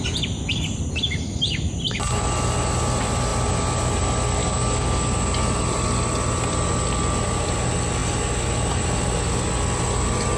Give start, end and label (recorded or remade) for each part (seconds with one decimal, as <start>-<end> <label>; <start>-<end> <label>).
0.0-4.4 recorded; 4.4-5.1 remade; 5.1-10.4 recorded